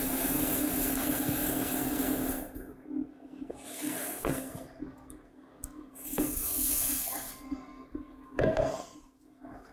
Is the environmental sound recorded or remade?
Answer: remade